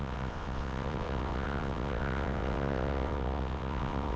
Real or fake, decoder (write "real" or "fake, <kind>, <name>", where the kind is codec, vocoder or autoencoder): fake, vocoder, WaveNeXt